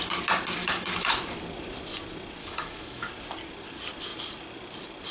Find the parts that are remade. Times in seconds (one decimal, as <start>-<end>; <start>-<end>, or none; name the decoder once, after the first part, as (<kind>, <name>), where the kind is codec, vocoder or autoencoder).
0.6-1.2 (autoencoder, DAC-VAE); 2.4-3.1